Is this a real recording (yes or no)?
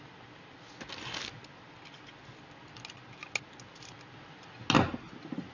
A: yes